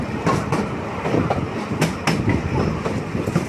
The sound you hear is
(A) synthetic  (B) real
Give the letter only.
B